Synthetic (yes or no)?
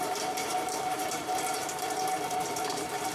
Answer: yes